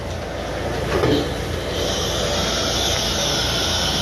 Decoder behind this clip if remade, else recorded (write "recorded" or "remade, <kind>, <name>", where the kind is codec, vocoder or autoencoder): recorded